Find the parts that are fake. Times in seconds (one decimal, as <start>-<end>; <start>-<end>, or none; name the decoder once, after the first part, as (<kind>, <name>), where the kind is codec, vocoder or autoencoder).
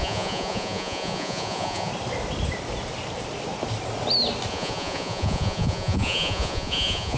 0.0-1.9 (vocoder, Vocos); 4.5-7.2